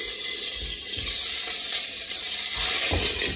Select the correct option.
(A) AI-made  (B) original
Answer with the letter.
B